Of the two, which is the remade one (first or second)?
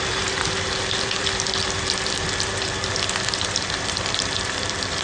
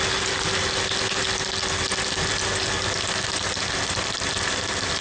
first